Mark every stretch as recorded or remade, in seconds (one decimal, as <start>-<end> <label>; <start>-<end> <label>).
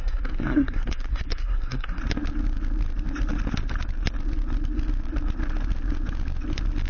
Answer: 0.0-2.0 remade; 2.0-6.9 recorded